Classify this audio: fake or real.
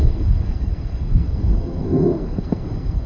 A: fake